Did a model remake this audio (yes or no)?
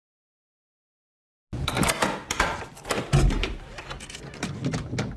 no